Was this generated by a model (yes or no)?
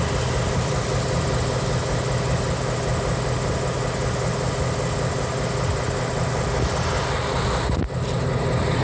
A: no